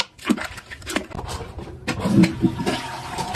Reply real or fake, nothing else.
real